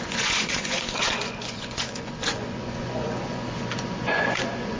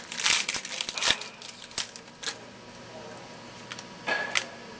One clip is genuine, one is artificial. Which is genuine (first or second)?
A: second